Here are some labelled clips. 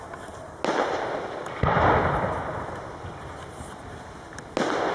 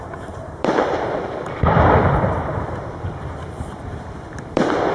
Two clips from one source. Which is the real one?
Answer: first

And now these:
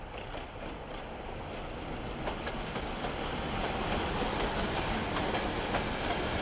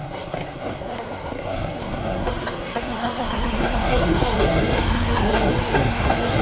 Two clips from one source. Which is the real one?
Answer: first